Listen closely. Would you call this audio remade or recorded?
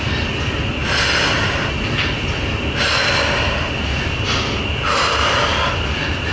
recorded